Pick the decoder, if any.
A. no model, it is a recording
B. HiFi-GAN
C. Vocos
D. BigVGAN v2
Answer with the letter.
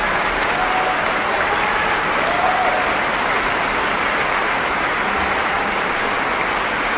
A